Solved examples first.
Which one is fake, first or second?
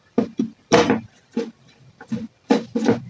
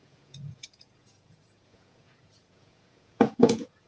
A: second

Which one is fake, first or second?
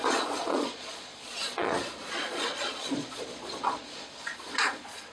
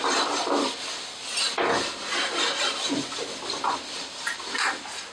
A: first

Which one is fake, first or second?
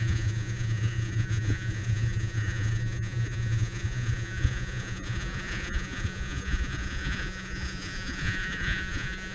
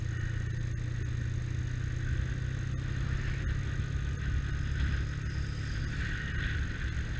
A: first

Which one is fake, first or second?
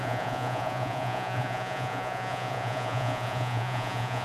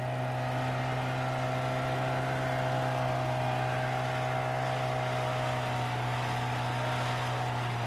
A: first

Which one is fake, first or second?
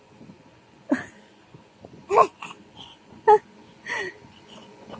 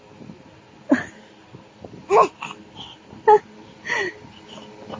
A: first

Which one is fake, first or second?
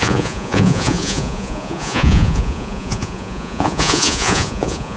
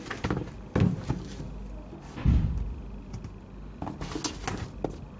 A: first